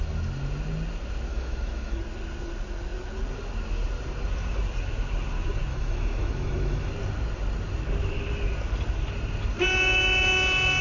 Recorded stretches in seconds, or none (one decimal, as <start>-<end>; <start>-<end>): 0.0-1.3; 2.0-5.7; 6.9-10.8